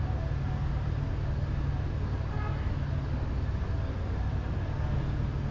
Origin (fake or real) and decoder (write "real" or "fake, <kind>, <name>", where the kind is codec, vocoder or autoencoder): real